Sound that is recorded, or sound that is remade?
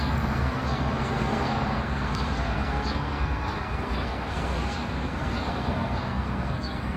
remade